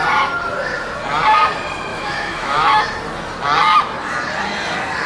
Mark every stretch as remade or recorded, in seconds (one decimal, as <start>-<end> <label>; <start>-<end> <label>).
0.0-1.9 recorded; 1.9-2.8 remade; 2.8-5.1 recorded